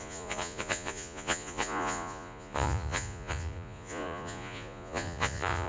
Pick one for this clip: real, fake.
fake